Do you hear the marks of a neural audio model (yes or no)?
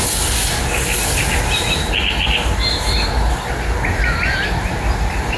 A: no